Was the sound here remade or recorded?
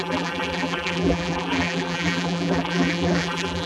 remade